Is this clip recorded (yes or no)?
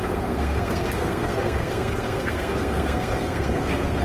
no